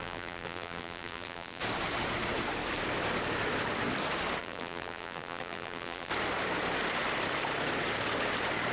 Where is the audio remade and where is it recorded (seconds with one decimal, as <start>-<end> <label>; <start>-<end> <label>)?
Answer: 0.0-1.6 remade; 1.6-4.4 recorded; 4.4-6.1 remade; 6.1-8.7 recorded